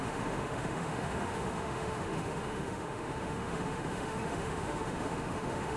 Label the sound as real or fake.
fake